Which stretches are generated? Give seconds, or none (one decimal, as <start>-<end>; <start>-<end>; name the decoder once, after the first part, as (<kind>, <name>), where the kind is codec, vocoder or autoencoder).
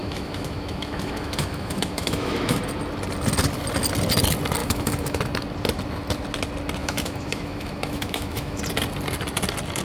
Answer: 0.0-2.6 (autoencoder, DAC-VAE); 4.6-5.2; 6.8-8.6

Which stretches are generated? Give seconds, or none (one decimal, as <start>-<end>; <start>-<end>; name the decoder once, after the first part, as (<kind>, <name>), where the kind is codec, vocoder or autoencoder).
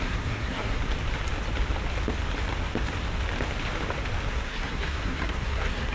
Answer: 0.0-0.8 (codec, SNAC); 4.3-5.9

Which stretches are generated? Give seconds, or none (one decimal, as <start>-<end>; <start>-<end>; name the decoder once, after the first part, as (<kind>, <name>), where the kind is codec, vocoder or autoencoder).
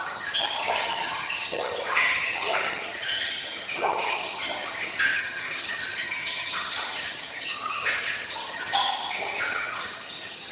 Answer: 0.0-10.5 (vocoder, HiFi-GAN)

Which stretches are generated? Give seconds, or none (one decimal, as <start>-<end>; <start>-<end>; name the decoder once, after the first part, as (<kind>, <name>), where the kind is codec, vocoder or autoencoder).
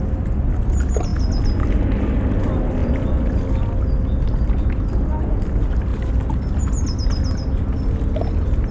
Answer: none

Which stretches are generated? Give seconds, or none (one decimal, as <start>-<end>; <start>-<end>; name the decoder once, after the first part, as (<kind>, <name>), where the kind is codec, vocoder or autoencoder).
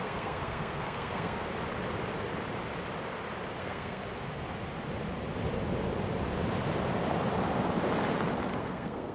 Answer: 0.0-1.5 (codec, SNAC); 3.6-4.0; 8.6-9.1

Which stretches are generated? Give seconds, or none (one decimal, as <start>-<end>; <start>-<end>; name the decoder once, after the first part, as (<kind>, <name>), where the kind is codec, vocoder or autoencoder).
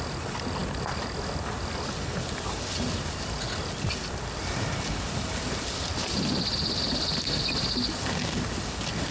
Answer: none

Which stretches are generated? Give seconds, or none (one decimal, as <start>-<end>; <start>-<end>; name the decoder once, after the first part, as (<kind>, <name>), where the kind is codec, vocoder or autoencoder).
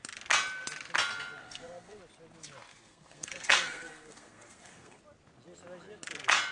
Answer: 1.4-2.0 (codec, SNAC); 2.7-5.0